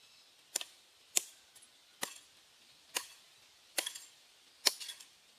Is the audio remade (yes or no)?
no